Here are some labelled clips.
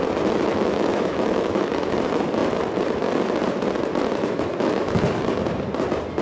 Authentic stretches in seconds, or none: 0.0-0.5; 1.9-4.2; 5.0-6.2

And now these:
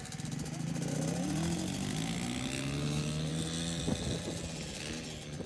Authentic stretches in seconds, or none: 0.0-5.5

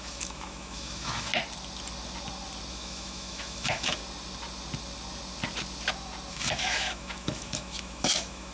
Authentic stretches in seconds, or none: 1.3-2.7; 4.0-6.3

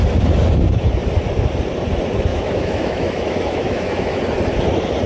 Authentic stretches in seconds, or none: 0.0-2.3; 4.2-5.1

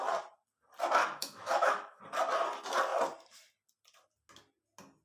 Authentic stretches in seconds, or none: 0.0-1.0; 2.0-5.0

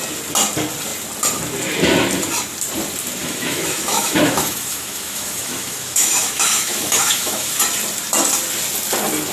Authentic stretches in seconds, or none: 0.0-3.2; 7.6-9.3